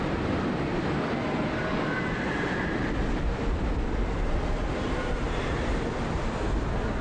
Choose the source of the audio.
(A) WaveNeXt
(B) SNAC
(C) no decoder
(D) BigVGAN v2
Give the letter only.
C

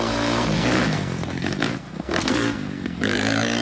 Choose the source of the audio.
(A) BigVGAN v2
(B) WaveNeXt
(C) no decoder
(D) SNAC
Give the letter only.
D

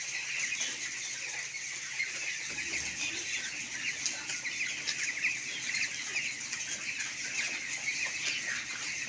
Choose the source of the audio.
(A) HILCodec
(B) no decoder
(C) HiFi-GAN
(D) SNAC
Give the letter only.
B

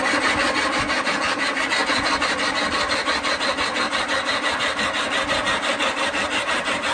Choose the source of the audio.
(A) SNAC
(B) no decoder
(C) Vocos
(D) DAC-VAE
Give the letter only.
B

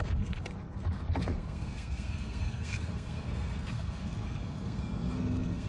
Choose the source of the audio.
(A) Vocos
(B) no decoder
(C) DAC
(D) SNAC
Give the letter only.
D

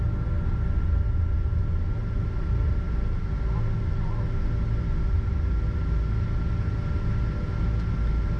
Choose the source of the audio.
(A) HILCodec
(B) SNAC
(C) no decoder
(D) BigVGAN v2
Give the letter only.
C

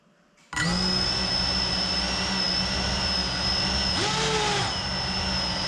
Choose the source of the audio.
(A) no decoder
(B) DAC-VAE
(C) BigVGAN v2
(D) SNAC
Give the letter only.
A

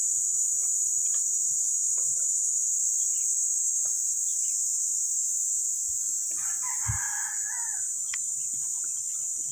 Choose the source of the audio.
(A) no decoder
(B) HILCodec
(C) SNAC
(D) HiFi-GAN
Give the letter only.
A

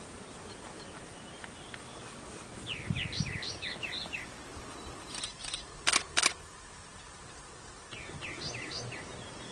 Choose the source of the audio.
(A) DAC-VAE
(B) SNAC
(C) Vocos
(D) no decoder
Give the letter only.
D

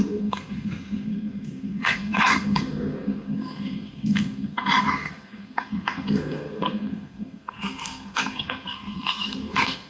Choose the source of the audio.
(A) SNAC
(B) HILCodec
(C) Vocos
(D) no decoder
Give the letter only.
A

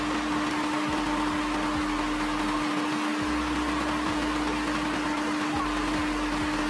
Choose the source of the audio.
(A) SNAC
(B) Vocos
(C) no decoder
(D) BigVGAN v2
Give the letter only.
C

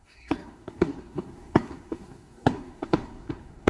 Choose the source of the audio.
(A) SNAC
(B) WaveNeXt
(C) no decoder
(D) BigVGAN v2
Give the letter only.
A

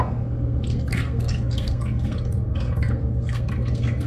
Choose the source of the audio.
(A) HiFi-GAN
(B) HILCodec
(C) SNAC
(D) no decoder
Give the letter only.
C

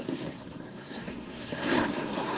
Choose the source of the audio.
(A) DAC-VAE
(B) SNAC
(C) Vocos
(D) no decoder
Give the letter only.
B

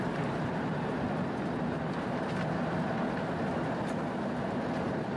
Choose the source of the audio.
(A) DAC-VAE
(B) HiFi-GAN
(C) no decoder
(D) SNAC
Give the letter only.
C